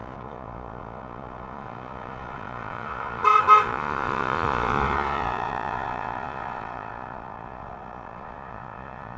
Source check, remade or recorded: remade